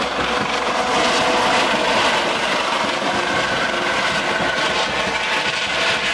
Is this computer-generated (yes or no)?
no